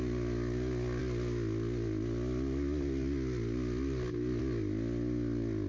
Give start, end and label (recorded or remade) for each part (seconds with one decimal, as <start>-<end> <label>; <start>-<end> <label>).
0.0-5.7 recorded